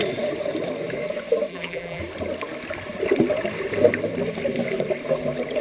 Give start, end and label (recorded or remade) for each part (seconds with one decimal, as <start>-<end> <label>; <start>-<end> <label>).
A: 0.0-1.5 recorded; 1.5-2.0 remade; 2.0-5.6 recorded